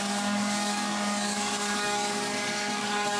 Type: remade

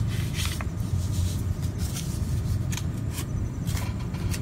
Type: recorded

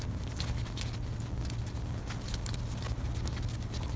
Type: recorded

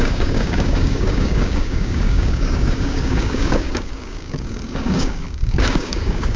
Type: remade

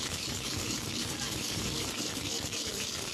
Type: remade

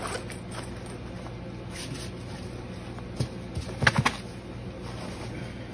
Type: recorded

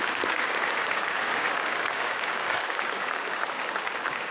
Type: remade